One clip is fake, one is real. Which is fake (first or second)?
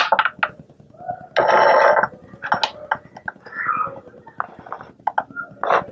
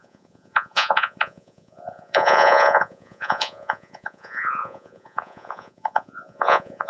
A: second